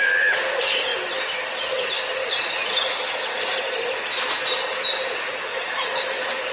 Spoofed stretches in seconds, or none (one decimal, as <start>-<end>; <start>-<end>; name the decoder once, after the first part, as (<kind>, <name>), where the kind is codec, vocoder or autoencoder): none